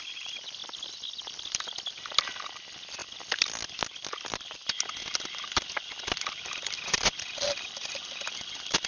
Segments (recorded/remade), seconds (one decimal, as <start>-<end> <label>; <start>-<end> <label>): 0.0-8.9 recorded